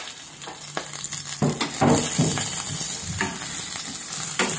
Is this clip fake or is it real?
real